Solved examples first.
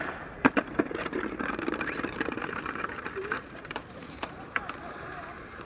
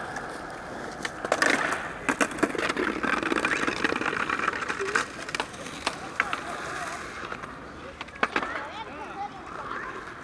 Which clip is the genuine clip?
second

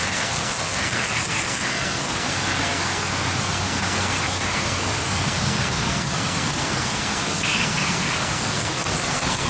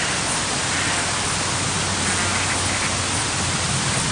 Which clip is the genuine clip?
second